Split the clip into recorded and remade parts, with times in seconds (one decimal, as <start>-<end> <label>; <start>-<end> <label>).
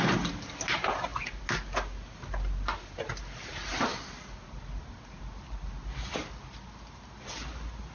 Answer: 0.0-7.9 recorded